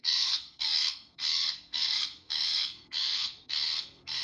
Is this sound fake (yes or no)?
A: yes